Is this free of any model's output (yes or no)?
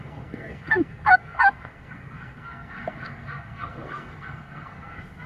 no